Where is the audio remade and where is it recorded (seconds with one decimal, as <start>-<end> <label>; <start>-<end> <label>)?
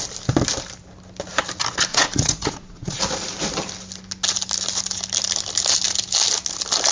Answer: 0.0-1.9 recorded; 1.9-3.0 remade; 3.0-6.9 recorded